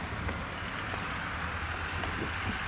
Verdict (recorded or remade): recorded